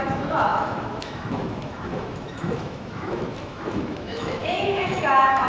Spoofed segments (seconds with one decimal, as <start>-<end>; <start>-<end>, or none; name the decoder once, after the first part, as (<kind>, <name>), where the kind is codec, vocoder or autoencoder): 0.0-5.5 (autoencoder, DAC-VAE)